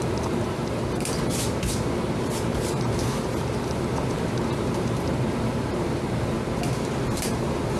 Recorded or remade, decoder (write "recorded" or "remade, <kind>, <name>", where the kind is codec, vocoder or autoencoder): remade, vocoder, BigVGAN v2